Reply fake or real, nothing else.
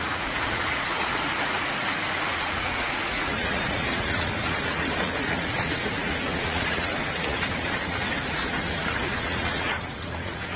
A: fake